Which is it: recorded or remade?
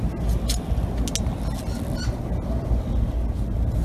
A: recorded